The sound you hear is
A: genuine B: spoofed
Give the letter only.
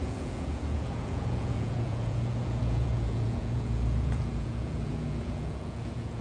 B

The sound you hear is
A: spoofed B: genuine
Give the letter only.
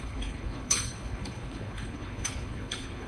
A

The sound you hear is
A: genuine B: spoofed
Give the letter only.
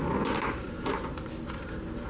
A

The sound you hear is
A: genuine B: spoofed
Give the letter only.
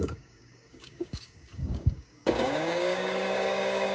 B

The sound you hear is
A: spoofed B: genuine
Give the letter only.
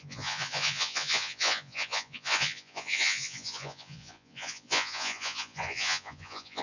A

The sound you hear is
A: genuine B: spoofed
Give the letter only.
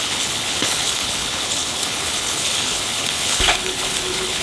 B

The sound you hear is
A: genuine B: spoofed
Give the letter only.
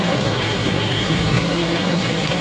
B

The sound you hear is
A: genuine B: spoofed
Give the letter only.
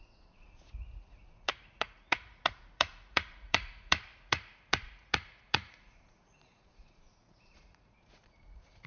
B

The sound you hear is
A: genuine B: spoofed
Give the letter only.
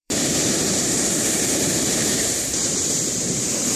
B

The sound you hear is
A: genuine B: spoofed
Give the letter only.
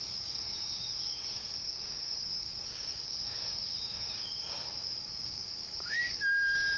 B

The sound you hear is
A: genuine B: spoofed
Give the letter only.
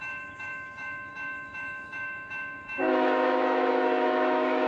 B